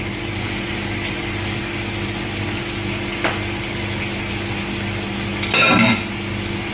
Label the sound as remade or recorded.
recorded